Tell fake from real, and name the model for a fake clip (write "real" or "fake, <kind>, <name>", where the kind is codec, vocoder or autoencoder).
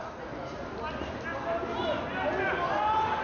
real